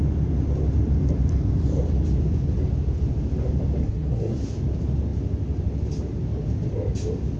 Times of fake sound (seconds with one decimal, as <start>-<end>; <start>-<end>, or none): 3.8-4.4